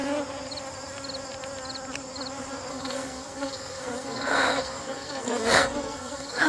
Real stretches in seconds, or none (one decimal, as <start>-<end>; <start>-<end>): 0.0-2.7